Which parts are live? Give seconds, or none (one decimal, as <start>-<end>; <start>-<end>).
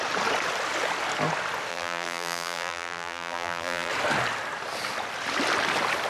0.0-1.7; 3.9-6.1